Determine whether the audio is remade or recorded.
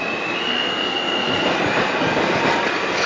recorded